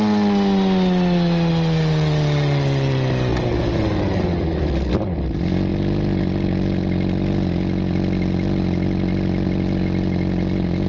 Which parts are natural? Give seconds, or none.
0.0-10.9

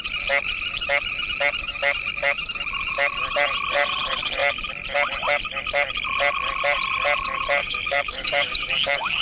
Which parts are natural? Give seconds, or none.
0.0-7.6